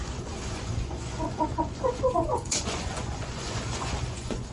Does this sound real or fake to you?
fake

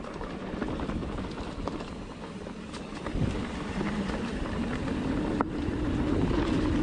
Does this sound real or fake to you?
real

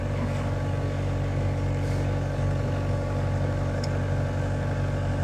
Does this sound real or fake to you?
fake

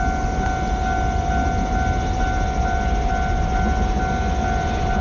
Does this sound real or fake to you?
real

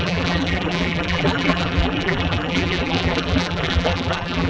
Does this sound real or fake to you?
fake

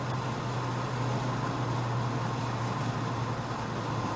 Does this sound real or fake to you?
real